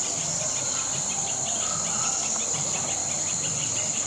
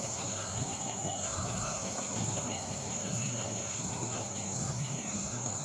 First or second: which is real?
first